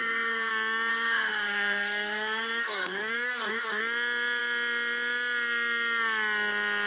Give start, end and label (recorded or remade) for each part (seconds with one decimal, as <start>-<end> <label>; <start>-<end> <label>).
0.0-0.5 remade; 0.5-0.9 recorded; 0.9-3.8 remade; 3.8-6.9 recorded